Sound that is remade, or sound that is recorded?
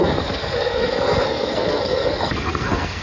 remade